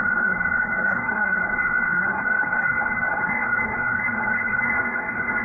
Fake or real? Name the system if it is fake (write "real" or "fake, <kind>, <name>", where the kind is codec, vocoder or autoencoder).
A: fake, codec, SNAC